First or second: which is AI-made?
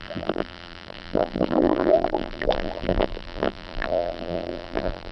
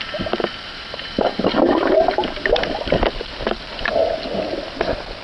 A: first